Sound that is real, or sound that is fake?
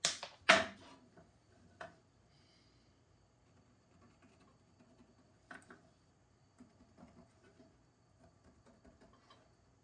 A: real